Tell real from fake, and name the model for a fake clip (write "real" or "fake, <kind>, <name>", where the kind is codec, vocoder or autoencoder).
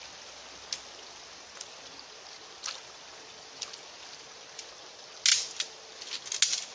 real